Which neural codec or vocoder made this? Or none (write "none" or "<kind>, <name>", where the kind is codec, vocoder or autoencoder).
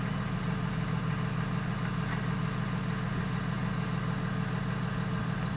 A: none